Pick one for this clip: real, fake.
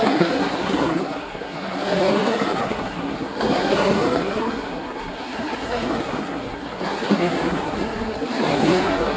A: fake